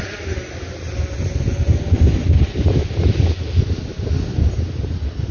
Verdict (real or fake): real